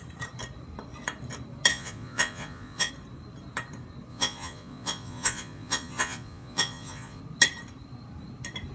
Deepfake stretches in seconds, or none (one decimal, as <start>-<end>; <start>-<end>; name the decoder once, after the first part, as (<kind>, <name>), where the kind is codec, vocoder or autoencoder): 1.7-2.9 (vocoder, Vocos); 4.1-7.2